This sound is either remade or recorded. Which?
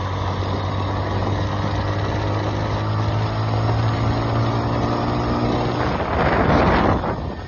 recorded